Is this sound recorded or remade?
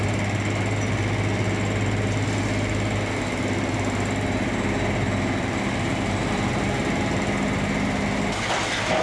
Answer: recorded